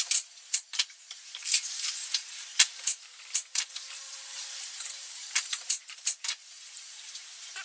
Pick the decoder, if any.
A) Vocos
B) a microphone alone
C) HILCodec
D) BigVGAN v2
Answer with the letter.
D